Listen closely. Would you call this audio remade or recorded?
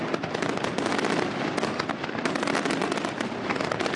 recorded